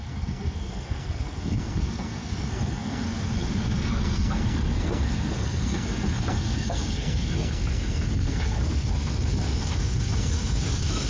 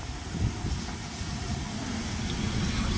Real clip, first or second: second